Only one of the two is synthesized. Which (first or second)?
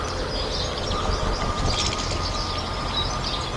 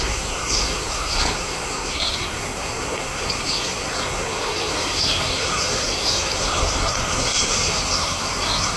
second